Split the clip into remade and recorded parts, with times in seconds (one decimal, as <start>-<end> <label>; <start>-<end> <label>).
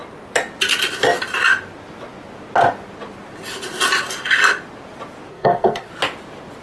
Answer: 0.0-5.3 recorded; 5.3-5.9 remade; 5.9-6.6 recorded